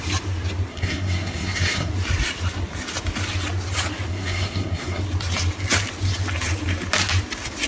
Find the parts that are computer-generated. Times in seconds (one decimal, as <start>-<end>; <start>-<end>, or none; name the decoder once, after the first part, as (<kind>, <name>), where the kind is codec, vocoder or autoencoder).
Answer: 0.7-1.9 (codec, SNAC); 4.1-5.0